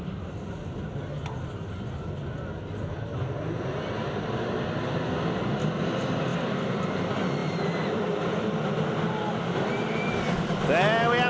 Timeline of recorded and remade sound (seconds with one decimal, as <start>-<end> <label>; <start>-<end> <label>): 0.0-6.3 recorded; 6.3-6.8 remade; 6.8-7.4 recorded; 7.4-8.7 remade; 8.7-11.3 recorded